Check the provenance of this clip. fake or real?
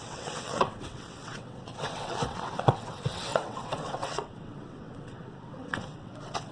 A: fake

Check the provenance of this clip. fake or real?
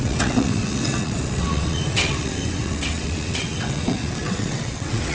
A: fake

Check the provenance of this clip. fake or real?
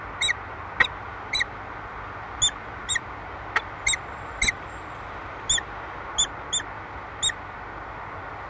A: real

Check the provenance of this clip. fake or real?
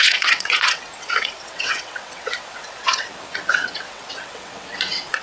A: fake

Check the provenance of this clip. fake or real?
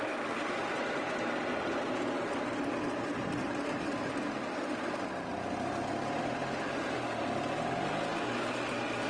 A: real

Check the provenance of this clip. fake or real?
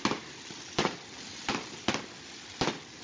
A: real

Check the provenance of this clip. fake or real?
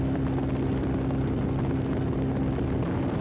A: real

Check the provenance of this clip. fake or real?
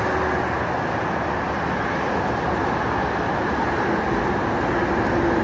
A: real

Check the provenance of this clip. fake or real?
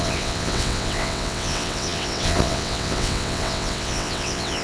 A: fake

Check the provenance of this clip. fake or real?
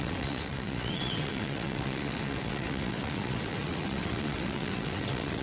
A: fake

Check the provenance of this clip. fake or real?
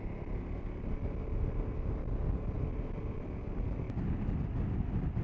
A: real